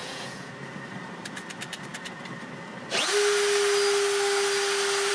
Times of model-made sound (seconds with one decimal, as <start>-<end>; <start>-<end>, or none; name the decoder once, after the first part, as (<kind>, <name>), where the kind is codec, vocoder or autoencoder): 0.0-0.5 (vocoder, Vocos)